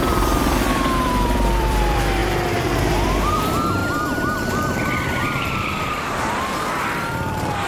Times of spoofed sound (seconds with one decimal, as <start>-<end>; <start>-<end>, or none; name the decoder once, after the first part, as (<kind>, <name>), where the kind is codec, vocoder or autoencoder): 0.0-2.2 (vocoder, BigVGAN v2); 2.9-7.7